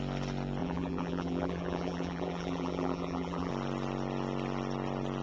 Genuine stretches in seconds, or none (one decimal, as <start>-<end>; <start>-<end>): 0.0-0.6; 3.5-5.2